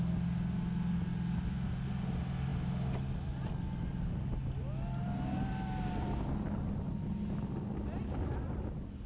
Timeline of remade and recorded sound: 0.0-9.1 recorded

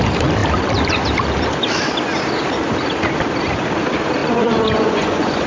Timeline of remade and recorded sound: 0.0-4.2 recorded; 4.2-5.5 remade